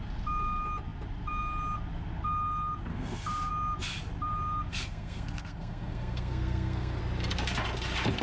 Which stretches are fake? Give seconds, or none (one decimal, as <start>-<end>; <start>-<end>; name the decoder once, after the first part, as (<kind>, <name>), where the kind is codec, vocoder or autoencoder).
2.9-3.5 (codec, SNAC); 4.7-7.0